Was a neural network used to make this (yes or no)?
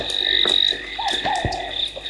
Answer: no